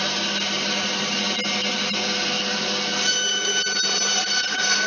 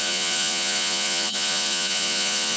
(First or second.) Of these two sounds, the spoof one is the second